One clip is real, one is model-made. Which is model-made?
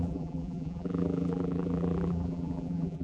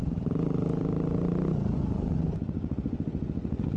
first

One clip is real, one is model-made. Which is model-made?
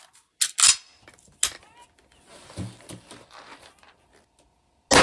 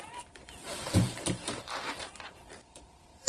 second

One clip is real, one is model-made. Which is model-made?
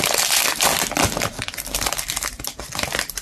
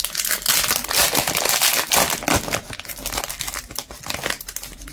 first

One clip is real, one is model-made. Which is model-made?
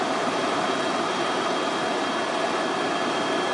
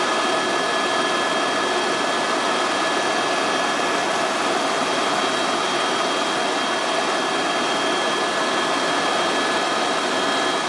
first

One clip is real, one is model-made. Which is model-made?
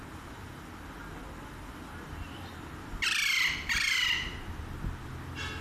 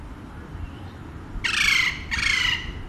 second